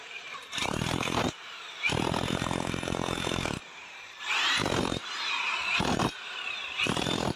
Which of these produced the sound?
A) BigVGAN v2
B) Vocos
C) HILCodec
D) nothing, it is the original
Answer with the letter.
A